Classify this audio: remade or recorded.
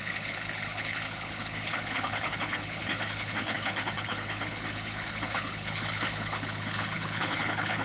remade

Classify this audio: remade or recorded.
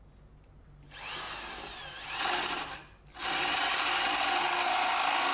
recorded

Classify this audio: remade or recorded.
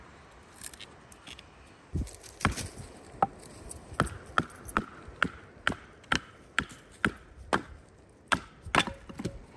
recorded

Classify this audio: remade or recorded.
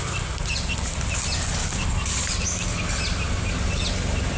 recorded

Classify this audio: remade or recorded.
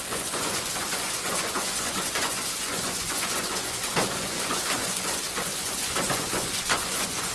remade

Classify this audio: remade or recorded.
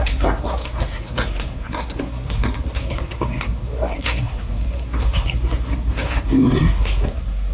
remade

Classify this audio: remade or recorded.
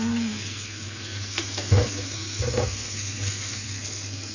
remade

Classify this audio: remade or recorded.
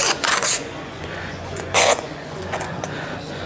remade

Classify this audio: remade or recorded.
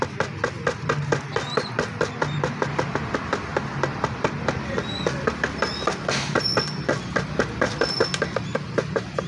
recorded